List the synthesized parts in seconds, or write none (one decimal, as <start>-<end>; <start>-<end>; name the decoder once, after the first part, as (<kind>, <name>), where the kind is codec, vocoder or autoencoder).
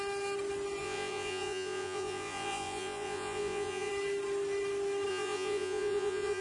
0.8-3.9 (vocoder, Vocos); 5.1-6.4